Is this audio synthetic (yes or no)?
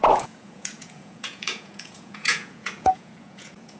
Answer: yes